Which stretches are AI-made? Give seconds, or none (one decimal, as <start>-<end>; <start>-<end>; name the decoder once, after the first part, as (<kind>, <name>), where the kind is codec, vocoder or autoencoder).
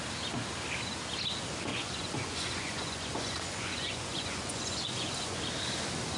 1.7-5.4 (vocoder, Vocos)